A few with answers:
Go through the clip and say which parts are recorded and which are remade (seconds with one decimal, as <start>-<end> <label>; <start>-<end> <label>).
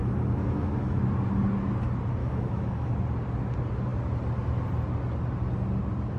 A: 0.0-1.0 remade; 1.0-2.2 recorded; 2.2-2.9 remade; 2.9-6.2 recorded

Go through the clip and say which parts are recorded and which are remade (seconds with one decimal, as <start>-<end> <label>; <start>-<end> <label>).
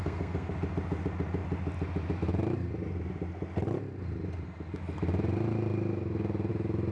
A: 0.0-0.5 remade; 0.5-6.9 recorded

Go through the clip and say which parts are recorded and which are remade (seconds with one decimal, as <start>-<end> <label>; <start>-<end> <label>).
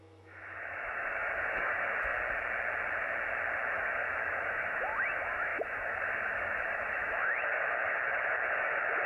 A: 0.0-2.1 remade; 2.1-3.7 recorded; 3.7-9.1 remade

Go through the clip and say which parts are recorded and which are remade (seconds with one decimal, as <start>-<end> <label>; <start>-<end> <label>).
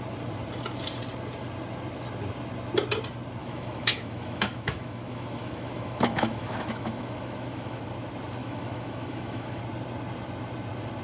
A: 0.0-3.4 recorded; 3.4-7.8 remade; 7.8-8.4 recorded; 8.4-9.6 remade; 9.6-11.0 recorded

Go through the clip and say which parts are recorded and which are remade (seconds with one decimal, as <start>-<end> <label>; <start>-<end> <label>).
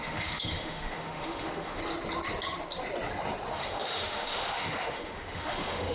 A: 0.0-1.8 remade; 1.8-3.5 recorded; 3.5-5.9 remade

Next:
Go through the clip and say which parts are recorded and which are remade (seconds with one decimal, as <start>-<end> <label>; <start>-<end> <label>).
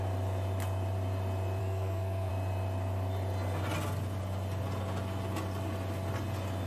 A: 0.0-1.6 recorded; 1.6-2.3 remade; 2.3-6.7 recorded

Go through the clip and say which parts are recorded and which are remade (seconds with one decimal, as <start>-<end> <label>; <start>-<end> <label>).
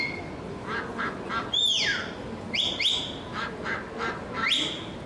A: 0.0-5.1 recorded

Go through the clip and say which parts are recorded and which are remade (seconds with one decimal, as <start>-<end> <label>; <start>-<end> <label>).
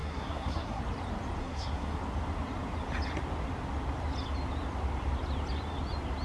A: 0.0-0.8 remade; 0.8-1.4 recorded; 1.4-2.0 remade; 2.0-6.2 recorded